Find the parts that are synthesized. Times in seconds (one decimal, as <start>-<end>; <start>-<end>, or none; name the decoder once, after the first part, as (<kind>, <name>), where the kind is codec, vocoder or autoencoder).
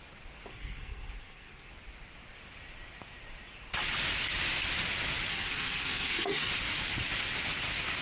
0.5-1.7 (codec, SNAC); 5.3-6.5